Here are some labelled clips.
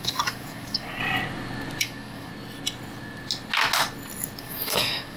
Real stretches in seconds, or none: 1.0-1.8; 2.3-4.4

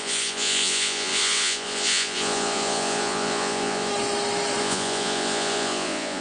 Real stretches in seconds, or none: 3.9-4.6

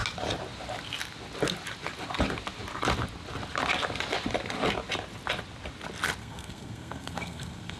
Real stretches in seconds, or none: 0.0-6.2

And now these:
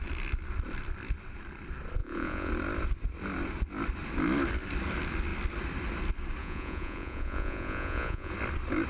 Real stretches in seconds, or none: 0.0-2.0; 2.5-6.4; 8.3-8.9

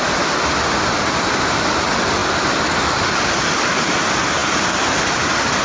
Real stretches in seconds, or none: 0.0-5.6

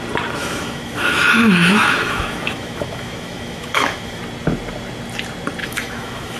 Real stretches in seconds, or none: 0.0-0.4; 4.2-5.6

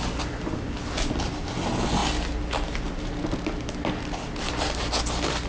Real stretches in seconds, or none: 0.0-5.5

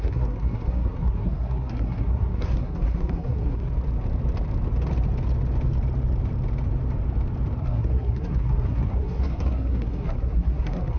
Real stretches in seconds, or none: 3.7-7.6